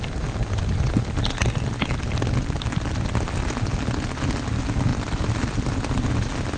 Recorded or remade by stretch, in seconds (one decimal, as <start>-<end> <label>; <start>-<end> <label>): 0.0-6.6 recorded